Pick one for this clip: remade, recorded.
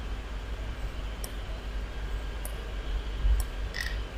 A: recorded